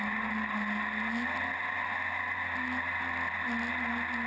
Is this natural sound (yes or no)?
yes